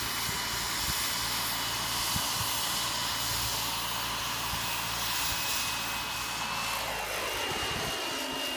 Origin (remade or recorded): recorded